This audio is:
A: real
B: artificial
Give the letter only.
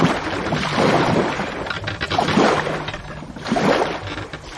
A